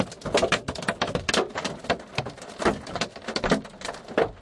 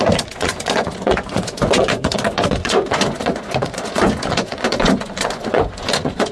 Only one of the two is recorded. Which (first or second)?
first